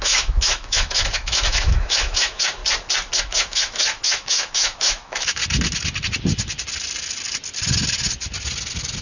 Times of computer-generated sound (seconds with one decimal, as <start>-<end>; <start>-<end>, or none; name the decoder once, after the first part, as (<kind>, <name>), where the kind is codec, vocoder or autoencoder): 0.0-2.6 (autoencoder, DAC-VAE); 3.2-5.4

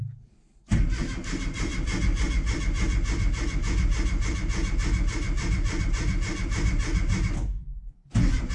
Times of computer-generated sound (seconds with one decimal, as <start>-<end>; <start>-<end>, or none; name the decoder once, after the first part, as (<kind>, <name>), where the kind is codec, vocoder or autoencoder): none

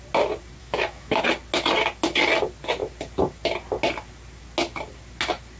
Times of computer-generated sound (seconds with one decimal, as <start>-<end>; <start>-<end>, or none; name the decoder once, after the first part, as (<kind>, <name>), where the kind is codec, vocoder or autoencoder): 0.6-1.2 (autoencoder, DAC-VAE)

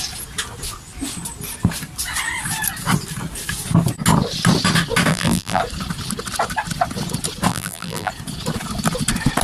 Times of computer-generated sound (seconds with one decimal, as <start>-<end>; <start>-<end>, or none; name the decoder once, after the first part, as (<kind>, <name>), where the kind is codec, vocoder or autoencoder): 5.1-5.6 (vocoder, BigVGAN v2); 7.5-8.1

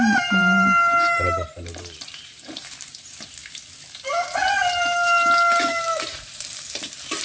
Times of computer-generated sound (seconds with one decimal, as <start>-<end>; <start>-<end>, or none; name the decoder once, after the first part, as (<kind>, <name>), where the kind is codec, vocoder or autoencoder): 0.0-3.4 (vocoder, BigVGAN v2); 4.1-7.2

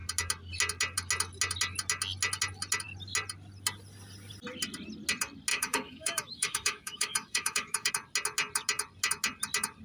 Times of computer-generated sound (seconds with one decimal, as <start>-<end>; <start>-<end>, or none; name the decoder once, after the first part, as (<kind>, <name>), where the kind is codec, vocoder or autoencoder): 5.5-7.9 (autoencoder, DAC-VAE)

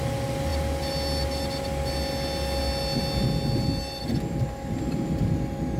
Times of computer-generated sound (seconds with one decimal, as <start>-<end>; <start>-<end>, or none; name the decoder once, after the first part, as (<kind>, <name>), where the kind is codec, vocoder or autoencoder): none